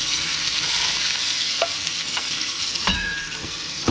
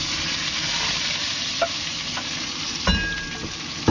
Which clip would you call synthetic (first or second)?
first